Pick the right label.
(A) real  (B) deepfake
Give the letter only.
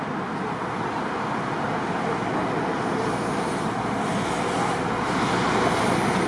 A